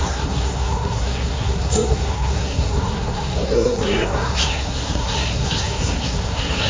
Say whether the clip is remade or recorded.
remade